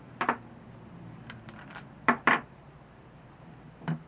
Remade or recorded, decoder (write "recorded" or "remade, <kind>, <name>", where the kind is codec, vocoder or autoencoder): remade, vocoder, BigVGAN v2